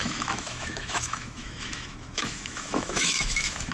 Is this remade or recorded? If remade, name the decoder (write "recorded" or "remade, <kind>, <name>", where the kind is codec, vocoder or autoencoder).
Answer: remade, autoencoder, DAC-VAE